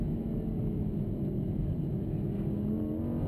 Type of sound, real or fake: real